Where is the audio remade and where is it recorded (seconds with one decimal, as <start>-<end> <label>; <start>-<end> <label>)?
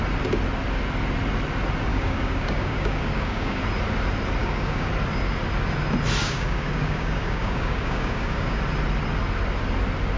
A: 0.0-1.9 recorded; 1.9-3.6 remade; 3.6-4.4 recorded; 4.4-4.9 remade; 4.9-6.2 recorded; 6.2-8.6 remade; 8.6-10.2 recorded